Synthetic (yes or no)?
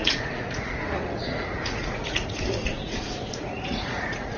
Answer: yes